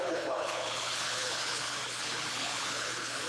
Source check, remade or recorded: remade